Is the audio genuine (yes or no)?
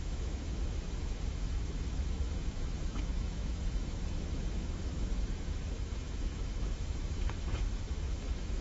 no